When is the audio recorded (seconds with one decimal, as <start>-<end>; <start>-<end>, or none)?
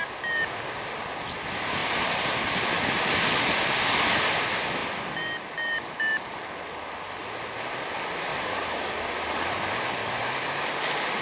0.0-8.3; 9.2-10.0; 10.7-11.2